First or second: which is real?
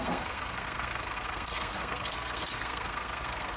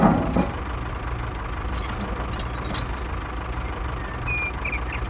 second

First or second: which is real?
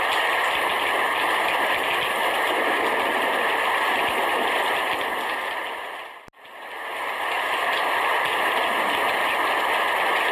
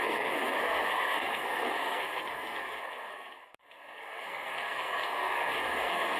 first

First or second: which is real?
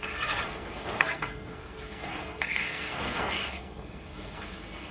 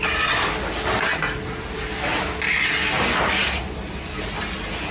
second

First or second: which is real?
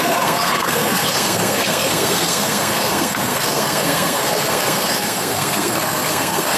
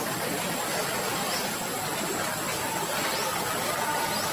second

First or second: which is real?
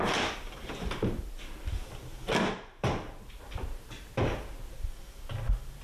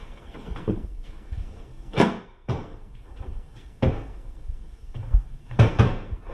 first